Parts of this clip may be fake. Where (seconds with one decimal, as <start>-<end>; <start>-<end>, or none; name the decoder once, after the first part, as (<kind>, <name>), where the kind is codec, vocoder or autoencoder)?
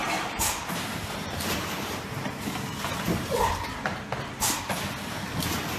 0.0-3.5 (vocoder, BigVGAN v2)